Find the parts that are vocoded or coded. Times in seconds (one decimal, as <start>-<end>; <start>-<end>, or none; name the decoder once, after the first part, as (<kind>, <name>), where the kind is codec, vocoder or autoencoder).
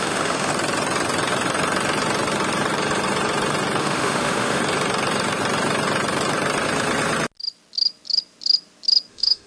0.0-0.5 (autoencoder, DAC-VAE); 3.8-4.6; 9.1-9.5